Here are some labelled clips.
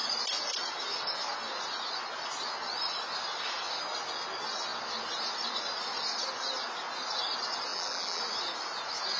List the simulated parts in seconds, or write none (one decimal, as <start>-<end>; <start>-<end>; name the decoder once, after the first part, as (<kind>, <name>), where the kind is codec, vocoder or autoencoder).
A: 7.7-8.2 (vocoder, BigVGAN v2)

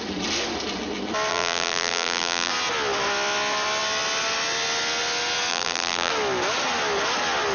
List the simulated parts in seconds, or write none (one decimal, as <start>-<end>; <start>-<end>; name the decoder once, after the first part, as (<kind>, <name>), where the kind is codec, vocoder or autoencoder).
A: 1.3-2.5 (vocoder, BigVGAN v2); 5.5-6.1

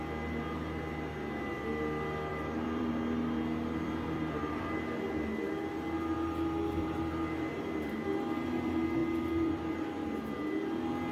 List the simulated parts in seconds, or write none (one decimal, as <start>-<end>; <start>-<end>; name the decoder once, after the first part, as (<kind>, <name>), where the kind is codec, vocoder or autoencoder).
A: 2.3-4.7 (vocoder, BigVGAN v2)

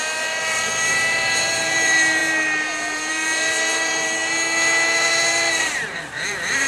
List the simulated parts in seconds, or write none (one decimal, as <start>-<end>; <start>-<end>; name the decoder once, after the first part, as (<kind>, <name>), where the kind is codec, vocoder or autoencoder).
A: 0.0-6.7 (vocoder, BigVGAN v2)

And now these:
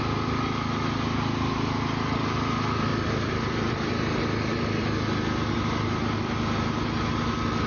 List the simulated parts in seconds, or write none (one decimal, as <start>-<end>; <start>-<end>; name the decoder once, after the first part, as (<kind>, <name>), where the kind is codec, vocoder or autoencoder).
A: 2.9-3.9 (vocoder, BigVGAN v2)